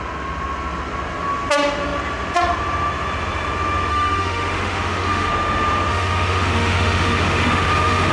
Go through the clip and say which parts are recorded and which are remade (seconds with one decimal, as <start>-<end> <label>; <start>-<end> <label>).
0.0-3.9 recorded; 3.9-5.3 remade; 5.3-5.9 recorded; 5.9-8.1 remade